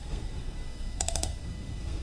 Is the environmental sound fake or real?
fake